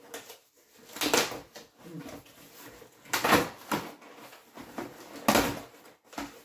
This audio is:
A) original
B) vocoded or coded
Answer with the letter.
A